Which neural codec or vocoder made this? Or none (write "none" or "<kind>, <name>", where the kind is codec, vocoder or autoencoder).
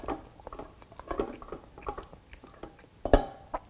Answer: none